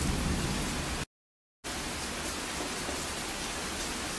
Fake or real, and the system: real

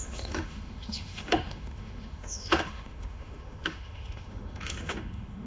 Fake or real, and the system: fake, autoencoder, DAC-VAE